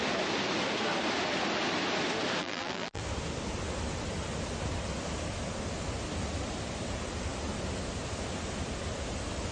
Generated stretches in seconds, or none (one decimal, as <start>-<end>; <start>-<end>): 2.4-3.0